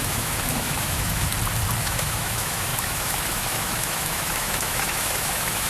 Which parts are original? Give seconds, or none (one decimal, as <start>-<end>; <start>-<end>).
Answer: 1.3-1.8